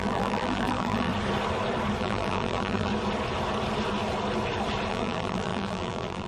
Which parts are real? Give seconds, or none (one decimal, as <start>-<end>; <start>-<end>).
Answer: 1.1-2.0; 2.9-4.9